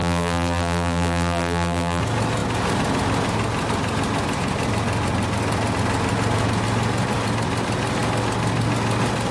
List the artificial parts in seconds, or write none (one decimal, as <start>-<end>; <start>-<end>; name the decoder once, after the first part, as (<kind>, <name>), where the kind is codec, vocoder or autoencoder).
0.0-2.0 (vocoder, BigVGAN v2)